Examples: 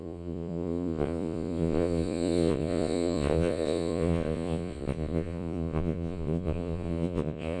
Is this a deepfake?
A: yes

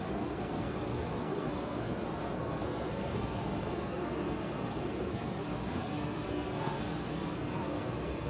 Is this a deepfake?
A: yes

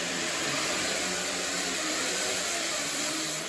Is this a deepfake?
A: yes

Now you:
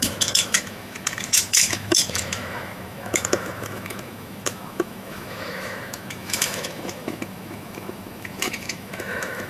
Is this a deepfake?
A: yes